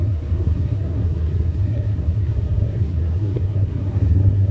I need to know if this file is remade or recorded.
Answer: remade